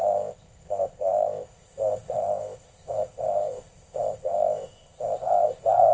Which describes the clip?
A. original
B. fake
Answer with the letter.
B